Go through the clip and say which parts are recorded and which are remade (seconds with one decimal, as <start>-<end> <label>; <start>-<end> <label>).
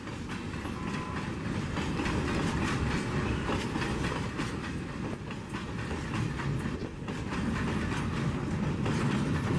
0.0-9.6 recorded